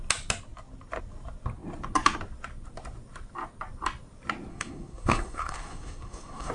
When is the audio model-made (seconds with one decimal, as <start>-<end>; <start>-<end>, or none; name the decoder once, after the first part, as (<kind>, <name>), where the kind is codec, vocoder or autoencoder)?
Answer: 4.5-6.5 (codec, SNAC)